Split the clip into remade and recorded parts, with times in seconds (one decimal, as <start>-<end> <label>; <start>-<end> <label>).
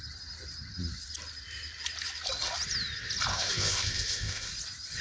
0.0-3.3 recorded; 3.3-4.5 remade; 4.5-5.0 recorded